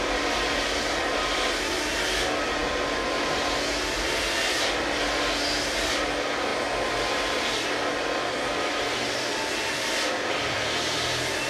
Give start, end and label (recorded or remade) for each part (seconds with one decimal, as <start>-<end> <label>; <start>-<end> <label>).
0.0-11.5 recorded

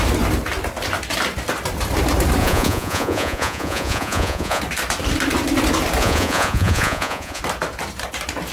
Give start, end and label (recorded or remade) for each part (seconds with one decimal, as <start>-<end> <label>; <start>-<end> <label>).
0.0-2.4 recorded; 2.4-4.6 remade; 4.6-6.0 recorded; 6.0-7.4 remade; 7.4-8.5 recorded

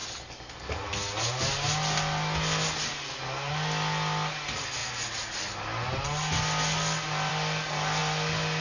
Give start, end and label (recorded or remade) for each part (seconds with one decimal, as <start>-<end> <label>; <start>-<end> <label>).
0.0-8.6 recorded

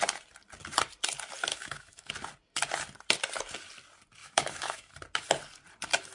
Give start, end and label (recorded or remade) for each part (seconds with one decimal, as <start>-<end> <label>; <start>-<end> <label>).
0.0-1.5 recorded; 1.5-2.1 remade; 2.1-4.2 recorded; 4.2-4.9 remade; 4.9-6.1 recorded